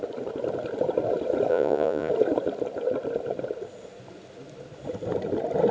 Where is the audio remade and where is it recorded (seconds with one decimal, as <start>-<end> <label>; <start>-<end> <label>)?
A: 0.0-1.5 recorded; 1.5-2.1 remade; 2.1-5.7 recorded